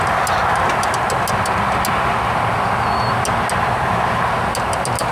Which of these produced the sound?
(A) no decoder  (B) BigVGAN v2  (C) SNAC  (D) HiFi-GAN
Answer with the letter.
A